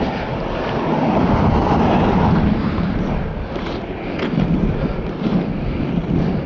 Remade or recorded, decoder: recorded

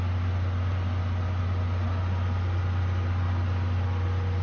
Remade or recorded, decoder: recorded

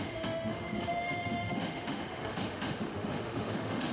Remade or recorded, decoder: remade, autoencoder, DAC-VAE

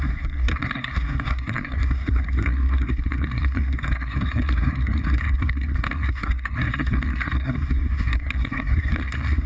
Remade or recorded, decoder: remade, codec, SNAC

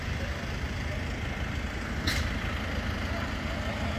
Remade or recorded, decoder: recorded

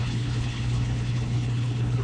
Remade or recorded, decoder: remade, codec, HILCodec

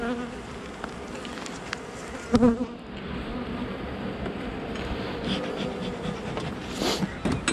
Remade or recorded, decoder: recorded